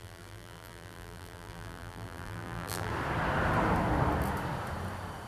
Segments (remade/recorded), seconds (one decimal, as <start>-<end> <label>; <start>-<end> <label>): 0.0-2.9 remade; 2.9-5.3 recorded